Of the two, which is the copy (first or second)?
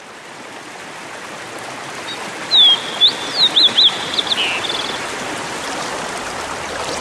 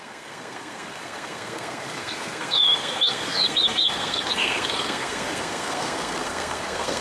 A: second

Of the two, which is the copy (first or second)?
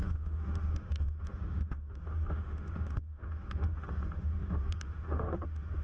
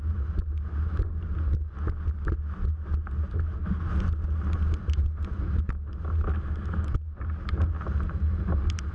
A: first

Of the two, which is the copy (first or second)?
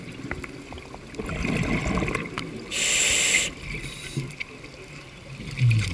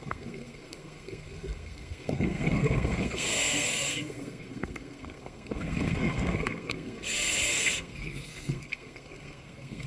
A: second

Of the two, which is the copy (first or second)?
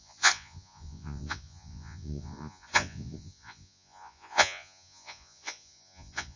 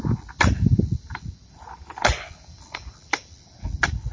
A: first